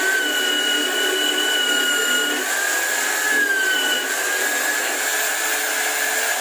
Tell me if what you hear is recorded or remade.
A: recorded